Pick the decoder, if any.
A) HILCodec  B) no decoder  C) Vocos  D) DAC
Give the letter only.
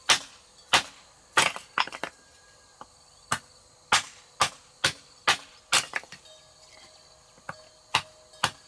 B